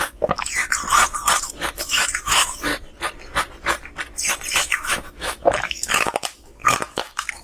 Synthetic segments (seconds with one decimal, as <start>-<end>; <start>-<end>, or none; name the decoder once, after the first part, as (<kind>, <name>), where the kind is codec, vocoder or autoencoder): 0.0-0.6 (autoencoder, DAC-VAE); 1.4-2.7; 4.5-7.4